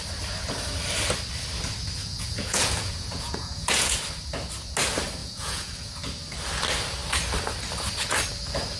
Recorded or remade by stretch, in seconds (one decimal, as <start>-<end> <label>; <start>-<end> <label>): 0.0-2.0 recorded; 2.0-4.0 remade; 4.0-5.2 recorded; 5.2-5.9 remade; 5.9-8.8 recorded